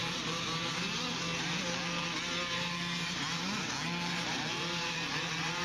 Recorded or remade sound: recorded